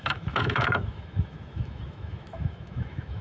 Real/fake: fake